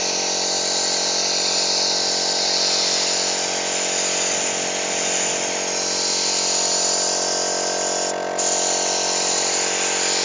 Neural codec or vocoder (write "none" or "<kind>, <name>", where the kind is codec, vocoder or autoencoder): none